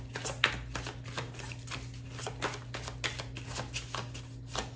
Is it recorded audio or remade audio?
recorded